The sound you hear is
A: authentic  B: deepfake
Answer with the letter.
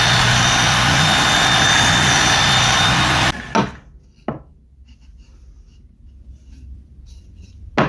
A